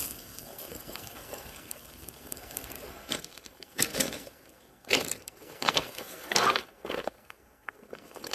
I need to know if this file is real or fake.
fake